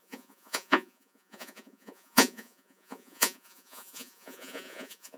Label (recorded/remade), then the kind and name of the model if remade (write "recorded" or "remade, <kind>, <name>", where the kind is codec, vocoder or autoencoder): remade, vocoder, Vocos